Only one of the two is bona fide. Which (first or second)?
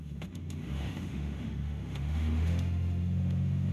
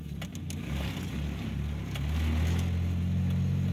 second